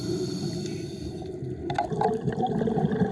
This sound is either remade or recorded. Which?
recorded